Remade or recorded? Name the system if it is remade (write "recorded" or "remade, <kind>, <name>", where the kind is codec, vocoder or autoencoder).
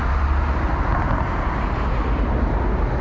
recorded